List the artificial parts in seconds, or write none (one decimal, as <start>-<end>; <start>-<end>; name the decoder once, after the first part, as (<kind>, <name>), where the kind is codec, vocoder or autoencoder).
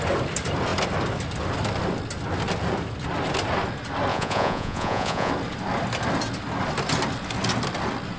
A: 4.1-5.3 (vocoder, Vocos)